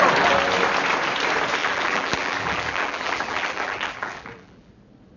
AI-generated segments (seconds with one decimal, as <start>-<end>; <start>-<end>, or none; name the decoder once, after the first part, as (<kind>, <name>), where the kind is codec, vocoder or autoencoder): 1.6-4.7 (vocoder, BigVGAN v2)